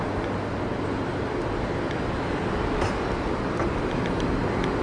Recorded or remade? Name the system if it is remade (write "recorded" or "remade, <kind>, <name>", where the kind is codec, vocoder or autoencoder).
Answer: recorded